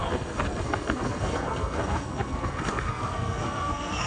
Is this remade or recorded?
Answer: remade